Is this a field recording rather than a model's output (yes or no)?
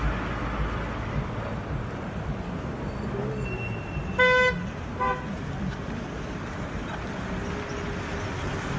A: yes